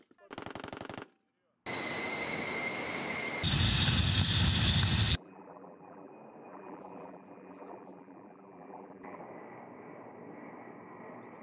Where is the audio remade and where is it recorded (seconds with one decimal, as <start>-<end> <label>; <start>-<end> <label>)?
0.0-5.1 recorded; 5.1-6.1 remade; 6.1-6.5 recorded; 6.5-9.2 remade; 9.2-11.4 recorded